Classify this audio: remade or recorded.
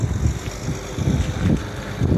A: recorded